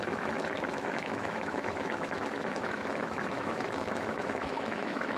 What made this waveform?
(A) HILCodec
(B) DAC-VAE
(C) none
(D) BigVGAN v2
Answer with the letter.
B